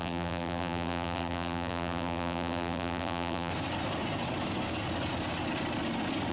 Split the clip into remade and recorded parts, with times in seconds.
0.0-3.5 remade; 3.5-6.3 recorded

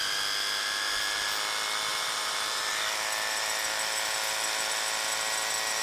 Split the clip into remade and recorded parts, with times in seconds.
0.0-1.9 recorded; 1.9-2.7 remade; 2.7-5.8 recorded

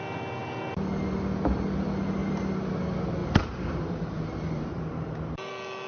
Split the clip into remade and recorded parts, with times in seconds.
0.0-3.2 recorded; 3.2-5.5 remade; 5.5-5.9 recorded

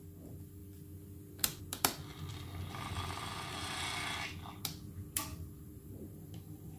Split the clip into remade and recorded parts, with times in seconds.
0.0-2.1 recorded; 2.1-3.3 remade; 3.3-5.3 recorded; 5.3-6.8 remade

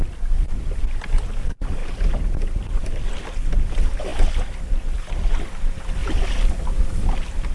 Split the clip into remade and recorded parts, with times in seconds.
0.0-6.0 recorded; 6.0-7.1 remade; 7.1-7.5 recorded